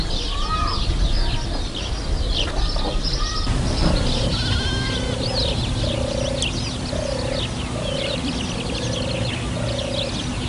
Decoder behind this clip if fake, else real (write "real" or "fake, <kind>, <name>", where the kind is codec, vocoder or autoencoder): real